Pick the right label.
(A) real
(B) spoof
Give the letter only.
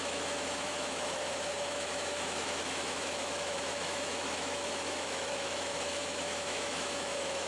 B